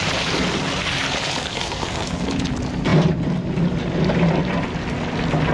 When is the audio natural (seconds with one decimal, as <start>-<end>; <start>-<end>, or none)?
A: 0.0-1.5; 2.3-5.5